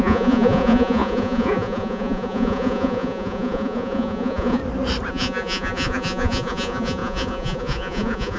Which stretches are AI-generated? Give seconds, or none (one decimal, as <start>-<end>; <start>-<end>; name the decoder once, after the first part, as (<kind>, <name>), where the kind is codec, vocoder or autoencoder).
0.0-4.6 (vocoder, Vocos); 5.1-8.4